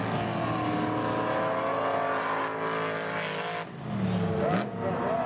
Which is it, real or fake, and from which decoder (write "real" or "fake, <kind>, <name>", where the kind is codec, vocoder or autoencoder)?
real